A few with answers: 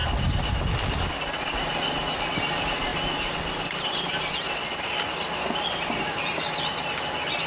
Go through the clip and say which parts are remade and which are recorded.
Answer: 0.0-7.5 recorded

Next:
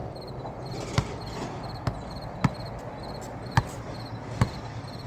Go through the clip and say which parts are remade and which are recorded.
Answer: 0.0-5.1 recorded